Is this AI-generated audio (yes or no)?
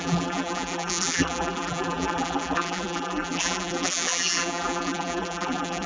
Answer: yes